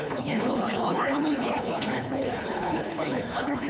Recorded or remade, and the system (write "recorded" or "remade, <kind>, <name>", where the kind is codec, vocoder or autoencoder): remade, codec, HILCodec